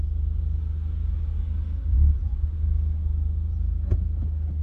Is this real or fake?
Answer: real